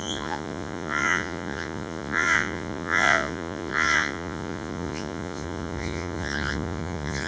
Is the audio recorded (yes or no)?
no